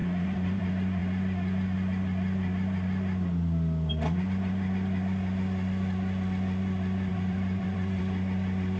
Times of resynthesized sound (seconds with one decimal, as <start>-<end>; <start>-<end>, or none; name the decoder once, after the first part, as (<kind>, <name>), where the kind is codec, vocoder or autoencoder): 0.0-0.6 (vocoder, BigVGAN v2); 7.1-8.0